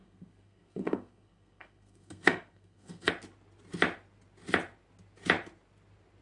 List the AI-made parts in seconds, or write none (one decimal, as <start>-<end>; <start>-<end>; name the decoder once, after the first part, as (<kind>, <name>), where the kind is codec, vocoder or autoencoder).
0.0-3.1 (codec, SNAC)